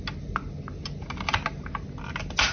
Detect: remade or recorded recorded